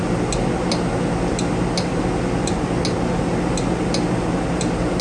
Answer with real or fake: real